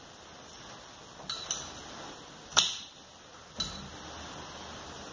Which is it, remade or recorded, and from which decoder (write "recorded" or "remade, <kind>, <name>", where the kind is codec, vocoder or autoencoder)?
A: recorded